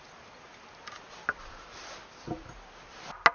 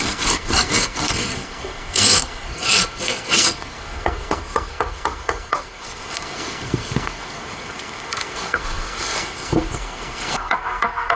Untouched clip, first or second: first